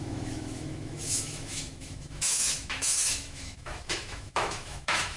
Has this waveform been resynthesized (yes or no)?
yes